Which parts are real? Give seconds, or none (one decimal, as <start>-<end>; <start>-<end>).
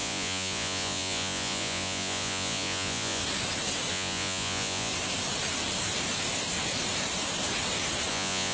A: 3.2-3.9; 4.9-8.1